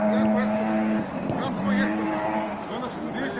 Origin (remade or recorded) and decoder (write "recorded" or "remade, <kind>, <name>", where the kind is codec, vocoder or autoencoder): recorded